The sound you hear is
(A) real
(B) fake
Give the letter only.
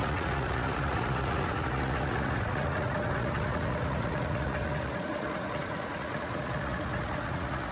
B